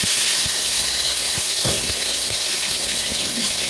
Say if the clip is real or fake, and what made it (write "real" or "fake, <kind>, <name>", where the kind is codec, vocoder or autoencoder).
fake, codec, SNAC